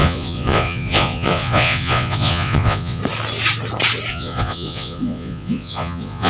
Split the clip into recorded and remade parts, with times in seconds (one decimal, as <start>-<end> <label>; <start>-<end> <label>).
0.0-3.0 remade; 3.0-4.1 recorded; 4.1-6.3 remade